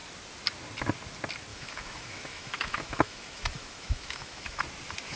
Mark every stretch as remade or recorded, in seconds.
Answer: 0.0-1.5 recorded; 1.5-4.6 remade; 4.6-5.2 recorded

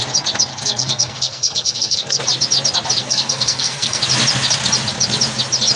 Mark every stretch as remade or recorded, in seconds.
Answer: 0.0-0.5 recorded; 0.5-2.2 remade; 2.2-3.0 recorded; 3.0-4.0 remade; 4.0-5.8 recorded

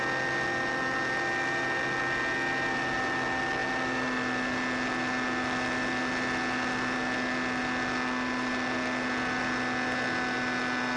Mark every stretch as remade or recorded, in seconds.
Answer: 0.0-11.0 recorded

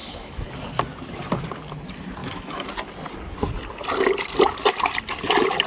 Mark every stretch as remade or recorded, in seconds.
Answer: 0.0-0.5 remade; 0.5-2.2 recorded; 2.2-2.7 remade; 2.7-5.7 recorded